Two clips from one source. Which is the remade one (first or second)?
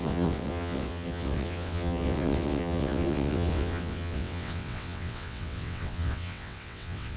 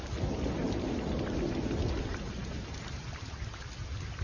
first